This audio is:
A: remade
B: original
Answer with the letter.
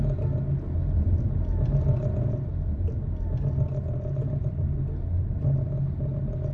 B